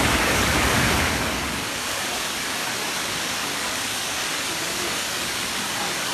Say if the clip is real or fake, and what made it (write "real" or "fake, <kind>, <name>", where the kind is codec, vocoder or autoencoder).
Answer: fake, codec, DAC